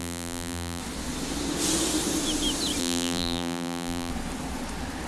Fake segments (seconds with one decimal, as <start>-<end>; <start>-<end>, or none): 0.0-0.8; 2.8-4.1